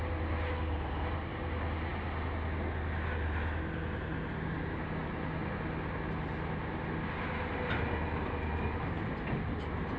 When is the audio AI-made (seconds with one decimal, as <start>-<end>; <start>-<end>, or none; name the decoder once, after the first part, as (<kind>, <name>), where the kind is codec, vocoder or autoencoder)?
none